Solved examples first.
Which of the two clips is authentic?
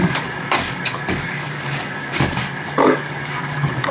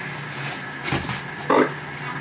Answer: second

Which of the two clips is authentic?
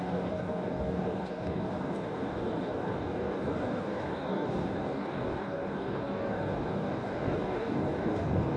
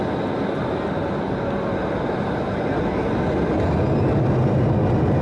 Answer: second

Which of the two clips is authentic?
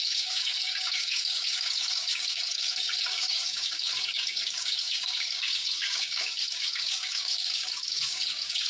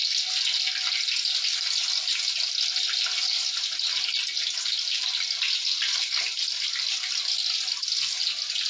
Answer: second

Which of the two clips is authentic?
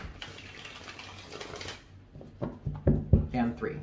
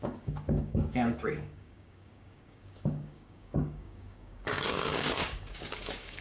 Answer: first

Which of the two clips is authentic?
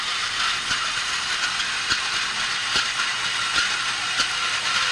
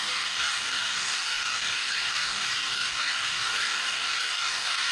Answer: first